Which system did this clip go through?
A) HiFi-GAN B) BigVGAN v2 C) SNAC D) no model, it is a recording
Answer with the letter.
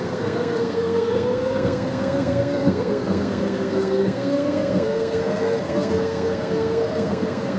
C